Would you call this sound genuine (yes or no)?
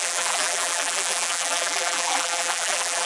no